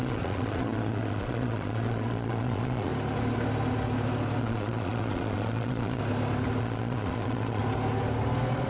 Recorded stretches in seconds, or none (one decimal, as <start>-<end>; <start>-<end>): 2.9-4.4; 6.0-6.6; 7.6-8.7